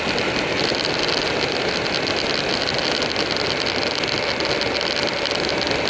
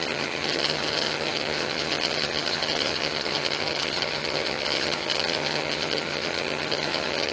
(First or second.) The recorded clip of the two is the first